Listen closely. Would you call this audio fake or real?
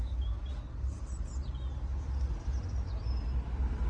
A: real